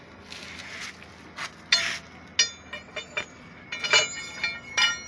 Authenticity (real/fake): real